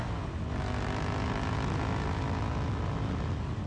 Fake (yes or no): no